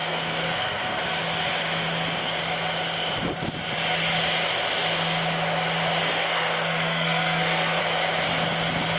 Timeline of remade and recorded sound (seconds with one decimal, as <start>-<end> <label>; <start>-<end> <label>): 0.0-1.0 remade; 1.0-6.1 recorded; 6.1-7.8 remade; 7.8-9.0 recorded